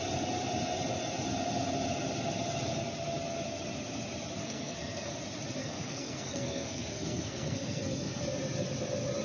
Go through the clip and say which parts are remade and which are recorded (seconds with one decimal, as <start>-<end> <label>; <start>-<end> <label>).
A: 0.0-4.4 recorded; 4.4-5.1 remade; 5.1-5.6 recorded; 5.6-8.2 remade; 8.2-9.2 recorded